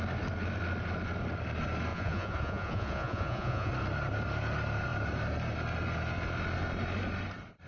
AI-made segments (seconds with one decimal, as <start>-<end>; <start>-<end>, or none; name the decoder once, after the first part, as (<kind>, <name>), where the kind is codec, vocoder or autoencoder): 1.9-3.7 (vocoder, Vocos)